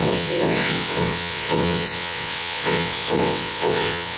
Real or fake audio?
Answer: fake